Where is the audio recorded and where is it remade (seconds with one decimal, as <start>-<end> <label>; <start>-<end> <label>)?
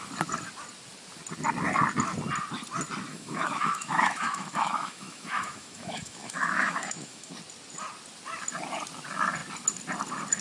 0.0-3.1 recorded; 3.1-7.3 remade; 7.3-10.4 recorded